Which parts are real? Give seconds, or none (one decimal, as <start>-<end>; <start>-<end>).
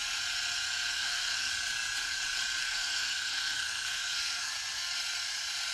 0.0-0.9; 1.5-2.6; 4.5-5.7